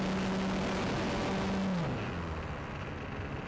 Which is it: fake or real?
real